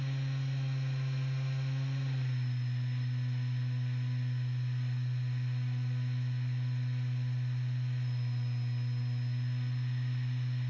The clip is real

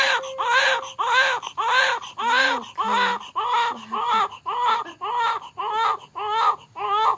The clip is real